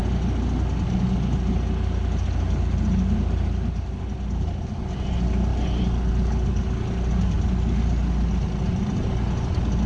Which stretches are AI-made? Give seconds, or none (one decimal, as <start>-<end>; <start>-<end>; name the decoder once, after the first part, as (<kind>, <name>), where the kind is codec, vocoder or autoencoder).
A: none

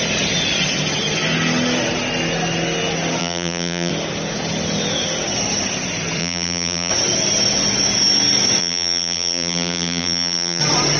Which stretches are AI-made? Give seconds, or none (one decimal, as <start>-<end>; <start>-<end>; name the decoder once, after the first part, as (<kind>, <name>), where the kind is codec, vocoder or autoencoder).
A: 3.2-3.9 (vocoder, BigVGAN v2); 6.2-6.9; 8.6-10.6

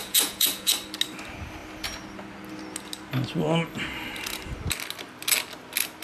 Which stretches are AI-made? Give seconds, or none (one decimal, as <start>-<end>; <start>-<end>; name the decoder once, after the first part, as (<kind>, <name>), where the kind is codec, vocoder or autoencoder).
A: 0.0-0.7 (vocoder, Vocos)

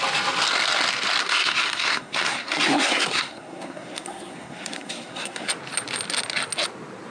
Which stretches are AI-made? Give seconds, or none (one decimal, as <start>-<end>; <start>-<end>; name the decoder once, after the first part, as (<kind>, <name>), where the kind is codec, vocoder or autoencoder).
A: 1.2-5.5 (codec, SNAC)